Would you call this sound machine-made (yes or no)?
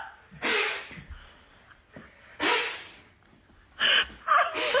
no